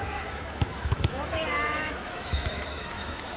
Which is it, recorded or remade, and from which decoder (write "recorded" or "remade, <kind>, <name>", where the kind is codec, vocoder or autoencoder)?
remade, autoencoder, DAC-VAE